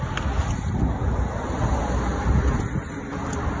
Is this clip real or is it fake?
real